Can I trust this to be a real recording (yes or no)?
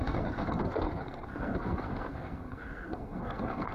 no